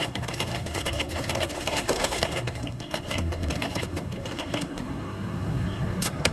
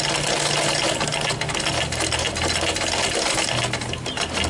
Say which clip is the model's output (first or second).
first